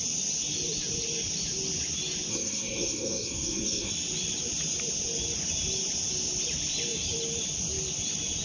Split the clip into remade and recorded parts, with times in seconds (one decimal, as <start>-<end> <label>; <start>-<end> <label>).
0.0-2.3 recorded; 2.3-3.9 remade; 3.9-8.4 recorded